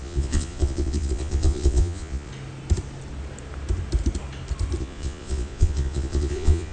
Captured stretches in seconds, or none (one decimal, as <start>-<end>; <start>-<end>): 2.3-4.8